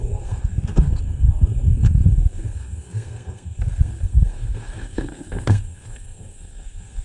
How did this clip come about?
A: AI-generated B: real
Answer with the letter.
A